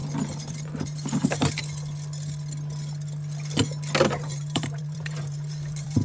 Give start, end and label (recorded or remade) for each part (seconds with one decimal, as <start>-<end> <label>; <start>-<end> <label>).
0.0-0.5 recorded; 0.5-1.6 remade; 1.6-4.0 recorded; 4.0-6.0 remade